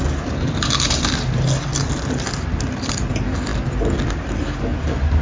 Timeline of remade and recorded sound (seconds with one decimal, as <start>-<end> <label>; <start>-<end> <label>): 0.0-5.2 recorded